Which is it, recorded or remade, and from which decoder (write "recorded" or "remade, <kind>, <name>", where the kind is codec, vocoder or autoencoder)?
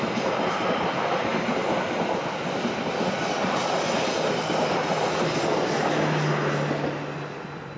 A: recorded